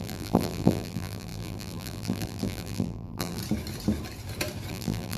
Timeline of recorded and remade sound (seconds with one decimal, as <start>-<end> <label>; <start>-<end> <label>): 0.0-3.4 remade; 3.4-4.7 recorded; 4.7-5.2 remade